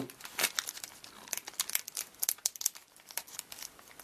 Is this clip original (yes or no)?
yes